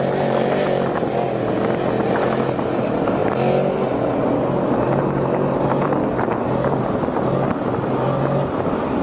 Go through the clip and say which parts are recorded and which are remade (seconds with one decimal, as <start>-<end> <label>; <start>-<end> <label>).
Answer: 0.0-9.0 recorded